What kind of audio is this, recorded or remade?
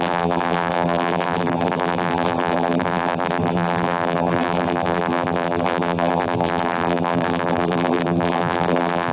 remade